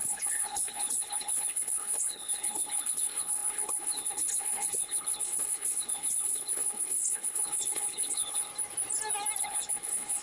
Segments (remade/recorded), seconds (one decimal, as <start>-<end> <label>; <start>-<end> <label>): 0.0-8.5 remade; 8.5-9.4 recorded; 9.4-10.2 remade

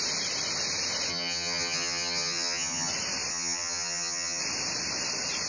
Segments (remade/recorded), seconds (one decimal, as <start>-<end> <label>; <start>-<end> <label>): 0.0-1.1 recorded; 1.1-2.9 remade; 2.9-3.3 recorded; 3.3-4.4 remade; 4.4-5.5 recorded

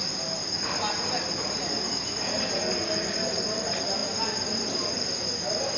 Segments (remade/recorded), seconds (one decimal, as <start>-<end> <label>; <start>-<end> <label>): 0.0-5.8 recorded